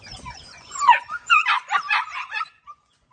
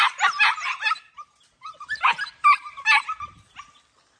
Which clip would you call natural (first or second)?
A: second